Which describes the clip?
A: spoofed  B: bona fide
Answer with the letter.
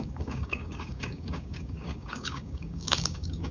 A